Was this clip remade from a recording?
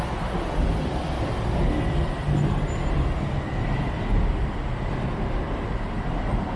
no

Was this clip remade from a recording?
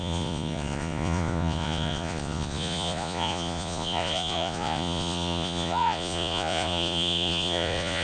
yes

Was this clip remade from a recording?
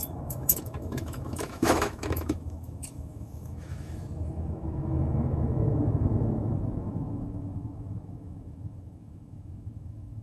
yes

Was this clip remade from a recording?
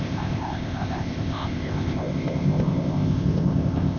yes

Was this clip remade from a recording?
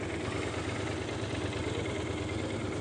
no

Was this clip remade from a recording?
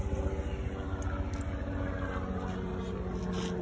no